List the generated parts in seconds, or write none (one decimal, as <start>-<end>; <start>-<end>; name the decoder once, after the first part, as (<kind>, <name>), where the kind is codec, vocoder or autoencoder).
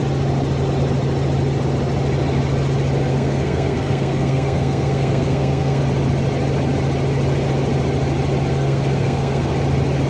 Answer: 3.1-5.8 (codec, SNAC); 8.5-9.5